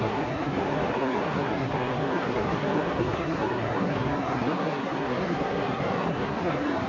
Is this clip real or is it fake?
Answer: fake